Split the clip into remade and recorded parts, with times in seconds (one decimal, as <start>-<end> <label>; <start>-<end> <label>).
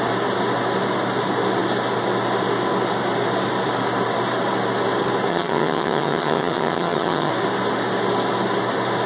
0.0-5.3 recorded; 5.3-7.3 remade; 7.3-9.1 recorded